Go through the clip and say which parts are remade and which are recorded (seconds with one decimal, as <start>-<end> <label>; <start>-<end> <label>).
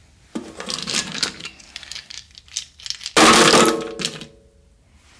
0.0-0.8 recorded; 0.8-2.3 remade; 2.3-5.2 recorded